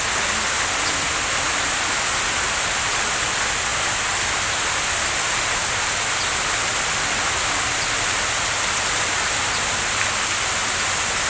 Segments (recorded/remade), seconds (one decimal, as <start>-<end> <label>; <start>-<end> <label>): 0.0-11.3 recorded